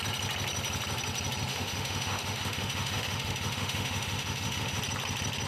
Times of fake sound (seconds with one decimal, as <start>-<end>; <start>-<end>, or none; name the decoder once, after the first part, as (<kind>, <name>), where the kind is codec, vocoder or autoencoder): 1.5-4.8 (autoencoder, DAC-VAE)